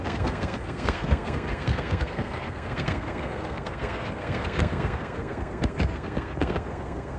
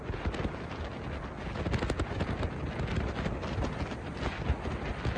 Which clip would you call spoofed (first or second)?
first